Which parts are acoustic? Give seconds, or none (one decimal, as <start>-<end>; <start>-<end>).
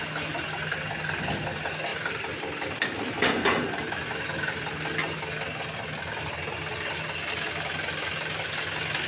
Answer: 0.0-1.9; 6.3-9.1